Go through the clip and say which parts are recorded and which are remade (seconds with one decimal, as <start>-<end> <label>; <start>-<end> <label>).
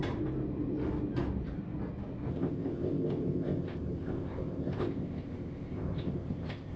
0.0-2.3 recorded; 2.3-6.8 remade